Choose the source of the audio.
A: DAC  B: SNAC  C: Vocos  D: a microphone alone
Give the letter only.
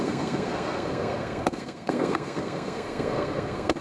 B